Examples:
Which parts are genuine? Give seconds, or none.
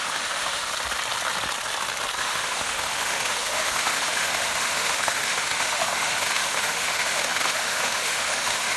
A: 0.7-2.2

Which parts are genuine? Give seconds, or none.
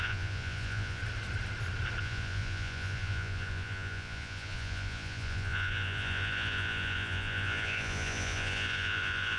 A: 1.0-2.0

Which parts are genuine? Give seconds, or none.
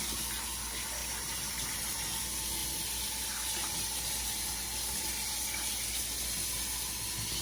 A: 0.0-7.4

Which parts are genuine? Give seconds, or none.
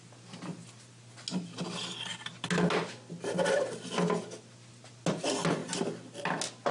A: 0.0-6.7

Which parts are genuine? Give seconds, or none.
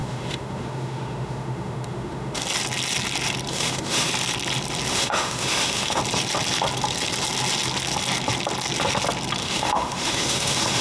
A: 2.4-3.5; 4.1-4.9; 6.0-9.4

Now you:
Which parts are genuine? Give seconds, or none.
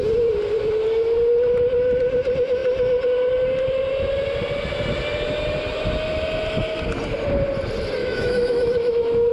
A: 0.0-8.0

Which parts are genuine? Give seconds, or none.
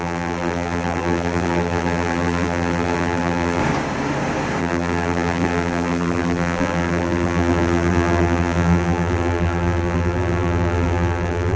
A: 3.6-4.6